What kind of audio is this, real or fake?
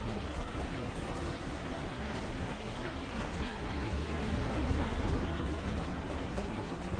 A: fake